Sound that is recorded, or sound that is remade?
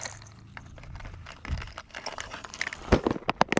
recorded